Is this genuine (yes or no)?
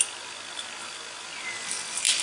yes